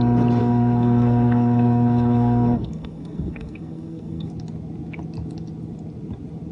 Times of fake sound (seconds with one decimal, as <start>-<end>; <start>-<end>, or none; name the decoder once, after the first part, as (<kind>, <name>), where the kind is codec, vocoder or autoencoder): 0.4-4.3 (codec, SNAC)